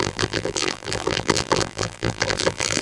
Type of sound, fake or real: fake